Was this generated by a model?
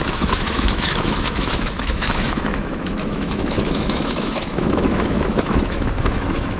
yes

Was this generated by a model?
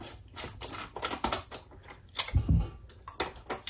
no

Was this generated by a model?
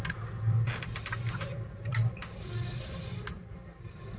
no